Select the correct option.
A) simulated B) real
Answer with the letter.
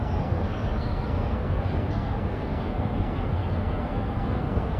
A